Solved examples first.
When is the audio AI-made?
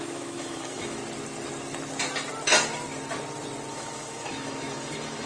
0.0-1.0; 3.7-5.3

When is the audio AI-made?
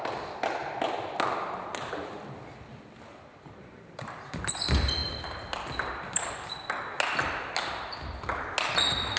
none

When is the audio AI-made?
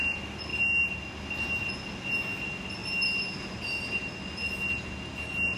none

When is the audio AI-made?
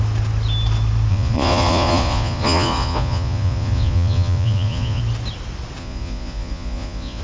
1.1-5.0; 5.8-7.2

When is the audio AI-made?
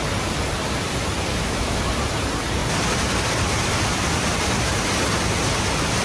1.3-1.8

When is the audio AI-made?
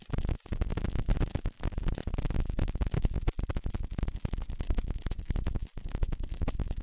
none